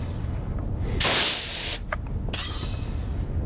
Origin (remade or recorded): recorded